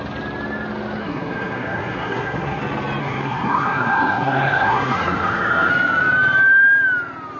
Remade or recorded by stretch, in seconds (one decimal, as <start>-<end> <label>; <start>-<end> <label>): 0.0-1.0 recorded; 1.0-2.6 remade; 2.6-3.0 recorded; 3.0-5.7 remade; 5.7-7.4 recorded